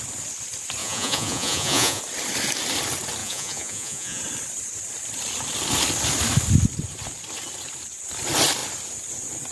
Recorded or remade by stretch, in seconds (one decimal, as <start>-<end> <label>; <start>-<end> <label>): 0.0-0.8 recorded; 0.8-2.0 remade; 2.0-3.2 recorded; 3.2-4.2 remade; 4.2-9.5 recorded